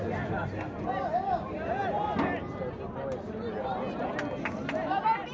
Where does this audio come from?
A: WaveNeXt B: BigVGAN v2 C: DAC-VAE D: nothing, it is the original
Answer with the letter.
D